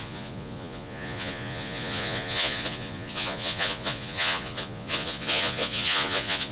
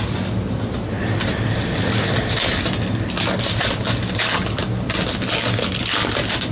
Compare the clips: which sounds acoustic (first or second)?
second